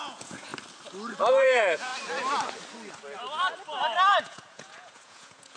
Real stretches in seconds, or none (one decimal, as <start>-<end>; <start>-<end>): 0.5-1.3; 1.9-4.2